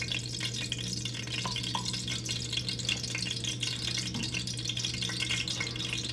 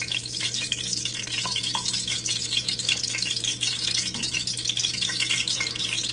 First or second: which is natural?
first